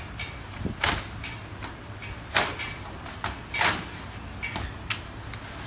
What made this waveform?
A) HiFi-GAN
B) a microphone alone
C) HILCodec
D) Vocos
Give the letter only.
B